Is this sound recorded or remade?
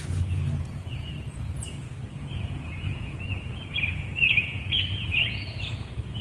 remade